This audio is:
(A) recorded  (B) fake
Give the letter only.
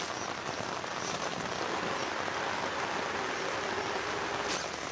A